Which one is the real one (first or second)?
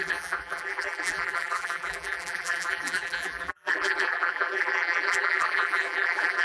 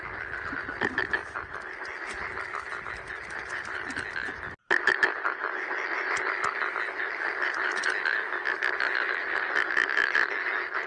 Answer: second